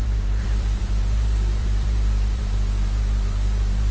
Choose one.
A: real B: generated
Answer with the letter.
B